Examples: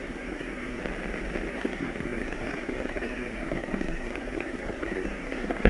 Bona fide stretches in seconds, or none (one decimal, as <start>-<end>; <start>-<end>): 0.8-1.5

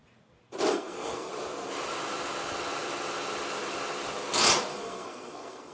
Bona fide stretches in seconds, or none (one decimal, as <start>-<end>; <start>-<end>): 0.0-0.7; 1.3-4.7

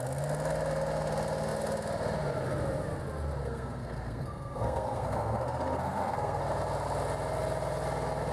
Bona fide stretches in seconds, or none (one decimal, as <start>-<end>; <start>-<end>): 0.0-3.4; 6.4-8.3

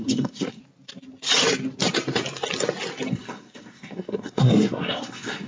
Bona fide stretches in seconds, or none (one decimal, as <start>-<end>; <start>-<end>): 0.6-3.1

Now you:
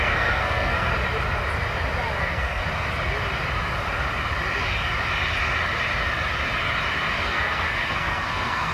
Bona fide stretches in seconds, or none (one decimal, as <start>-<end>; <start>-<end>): 0.9-2.2; 2.6-7.2

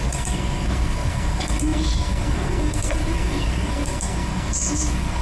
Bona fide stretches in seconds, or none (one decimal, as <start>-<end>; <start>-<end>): none